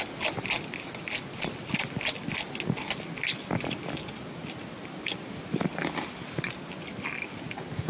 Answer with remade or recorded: recorded